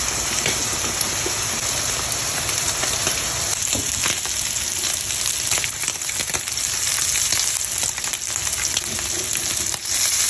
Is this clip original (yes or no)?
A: yes